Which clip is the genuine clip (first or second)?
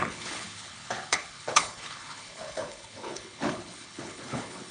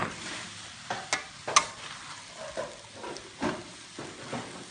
second